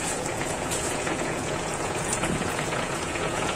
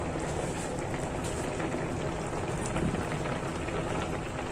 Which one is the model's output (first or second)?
first